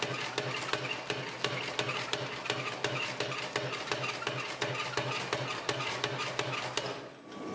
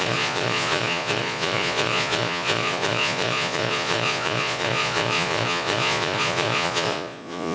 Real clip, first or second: first